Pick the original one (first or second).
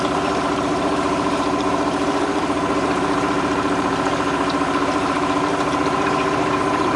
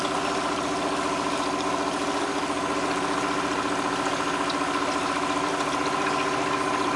second